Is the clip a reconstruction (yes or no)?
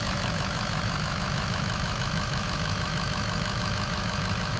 yes